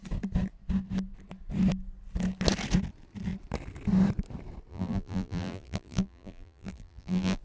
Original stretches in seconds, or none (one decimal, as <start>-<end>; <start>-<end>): 0.0-4.7